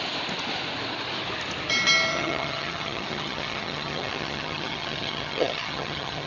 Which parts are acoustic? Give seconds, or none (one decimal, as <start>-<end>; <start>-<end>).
0.0-2.1